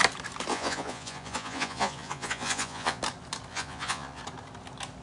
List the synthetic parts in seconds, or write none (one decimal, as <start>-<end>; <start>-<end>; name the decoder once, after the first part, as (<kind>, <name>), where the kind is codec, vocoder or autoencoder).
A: 0.5-3.0 (vocoder, Vocos); 3.5-4.2